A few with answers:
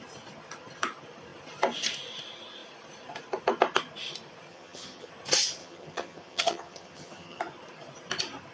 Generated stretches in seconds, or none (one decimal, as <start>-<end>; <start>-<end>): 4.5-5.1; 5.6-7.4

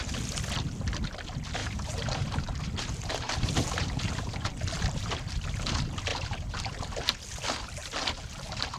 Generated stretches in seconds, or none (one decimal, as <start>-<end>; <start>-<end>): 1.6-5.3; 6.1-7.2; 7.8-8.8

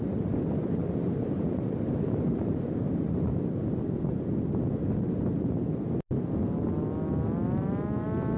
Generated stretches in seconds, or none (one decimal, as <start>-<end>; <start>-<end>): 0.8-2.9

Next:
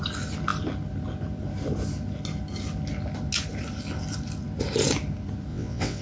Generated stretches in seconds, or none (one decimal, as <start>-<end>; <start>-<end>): 5.5-6.0

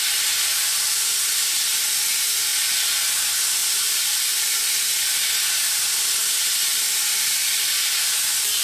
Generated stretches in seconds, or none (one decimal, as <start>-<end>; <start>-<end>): 3.6-5.3

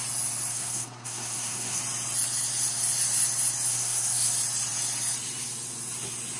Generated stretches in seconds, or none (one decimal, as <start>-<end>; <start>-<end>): 0.5-1.8; 3.7-4.3

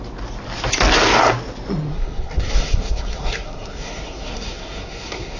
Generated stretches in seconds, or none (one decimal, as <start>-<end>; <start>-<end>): 1.9-5.4